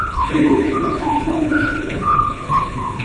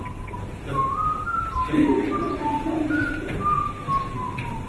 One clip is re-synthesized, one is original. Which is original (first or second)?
second